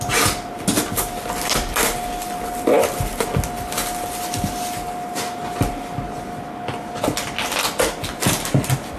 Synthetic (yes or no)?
no